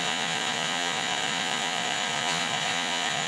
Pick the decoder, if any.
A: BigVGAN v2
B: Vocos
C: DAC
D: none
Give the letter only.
B